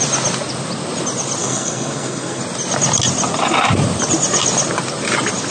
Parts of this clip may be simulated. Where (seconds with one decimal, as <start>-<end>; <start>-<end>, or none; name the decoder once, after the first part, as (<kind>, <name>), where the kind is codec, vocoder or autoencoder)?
1.4-2.4 (codec, SNAC)